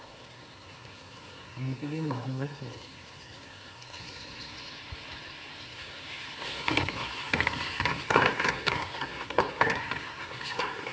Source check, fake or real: fake